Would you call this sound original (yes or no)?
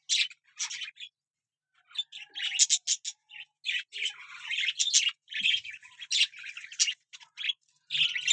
yes